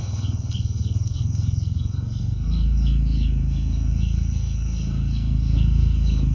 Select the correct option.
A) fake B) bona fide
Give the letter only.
A